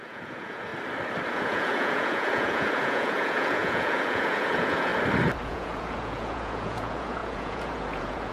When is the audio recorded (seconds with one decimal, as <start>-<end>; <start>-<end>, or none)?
0.7-1.3; 4.9-5.4